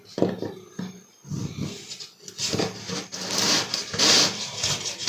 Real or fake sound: real